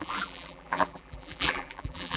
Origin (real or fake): fake